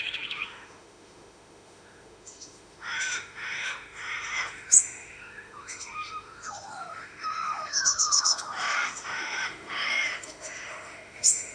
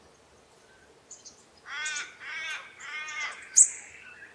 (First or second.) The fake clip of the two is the first